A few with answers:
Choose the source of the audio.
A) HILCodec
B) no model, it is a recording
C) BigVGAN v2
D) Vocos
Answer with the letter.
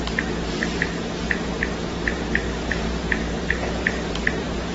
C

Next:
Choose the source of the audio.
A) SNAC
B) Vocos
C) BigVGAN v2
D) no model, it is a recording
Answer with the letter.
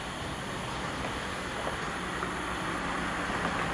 D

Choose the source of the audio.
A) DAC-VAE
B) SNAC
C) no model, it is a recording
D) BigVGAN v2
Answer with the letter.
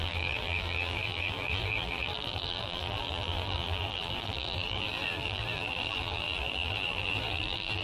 D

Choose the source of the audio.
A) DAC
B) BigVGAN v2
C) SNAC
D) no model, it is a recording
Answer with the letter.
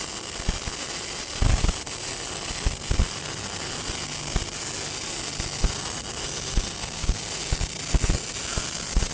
D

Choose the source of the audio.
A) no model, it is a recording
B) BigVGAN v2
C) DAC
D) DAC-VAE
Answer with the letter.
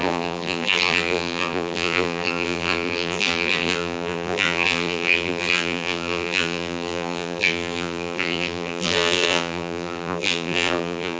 B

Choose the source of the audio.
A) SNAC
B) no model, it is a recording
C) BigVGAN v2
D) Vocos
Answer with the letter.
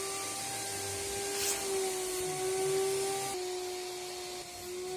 B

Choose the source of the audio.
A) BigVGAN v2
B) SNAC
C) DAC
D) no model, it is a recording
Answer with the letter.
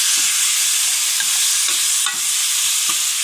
D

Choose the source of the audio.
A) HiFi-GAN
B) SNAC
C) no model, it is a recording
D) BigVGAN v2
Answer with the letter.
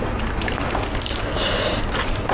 C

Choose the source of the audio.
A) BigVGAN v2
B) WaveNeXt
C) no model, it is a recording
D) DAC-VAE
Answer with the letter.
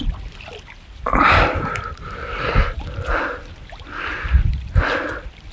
A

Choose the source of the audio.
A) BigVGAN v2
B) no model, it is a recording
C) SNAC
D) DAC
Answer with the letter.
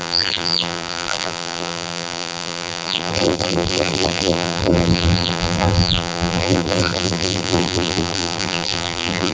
A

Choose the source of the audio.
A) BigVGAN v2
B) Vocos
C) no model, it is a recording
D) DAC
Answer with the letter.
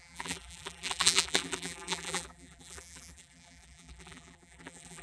A